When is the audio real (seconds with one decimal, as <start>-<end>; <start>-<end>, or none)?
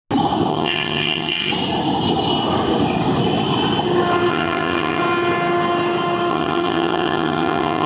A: 0.0-0.5; 1.5-4.3; 5.0-6.3